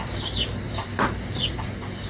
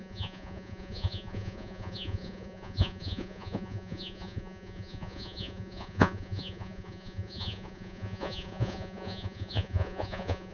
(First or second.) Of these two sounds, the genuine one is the first